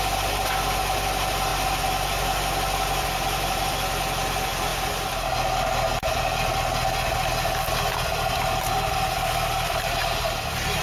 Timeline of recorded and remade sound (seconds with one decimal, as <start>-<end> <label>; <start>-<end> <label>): 0.0-10.8 recorded